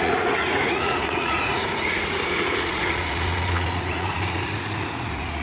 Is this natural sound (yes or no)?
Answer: no